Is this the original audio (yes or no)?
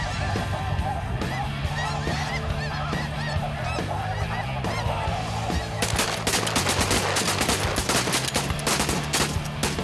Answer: yes